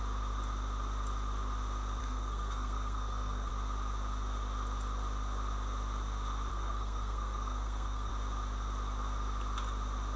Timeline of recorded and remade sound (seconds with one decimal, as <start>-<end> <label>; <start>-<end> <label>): 0.0-2.0 recorded; 2.0-3.5 remade; 3.5-6.5 recorded; 6.5-8.1 remade; 8.1-10.2 recorded